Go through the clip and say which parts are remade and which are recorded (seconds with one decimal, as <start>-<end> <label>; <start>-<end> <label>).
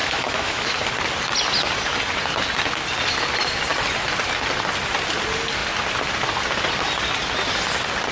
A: 0.0-0.8 remade; 0.8-8.1 recorded